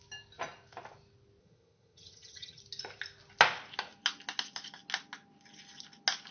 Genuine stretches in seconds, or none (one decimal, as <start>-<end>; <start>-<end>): 0.0-1.4; 2.6-6.3